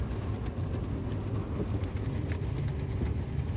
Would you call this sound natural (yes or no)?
yes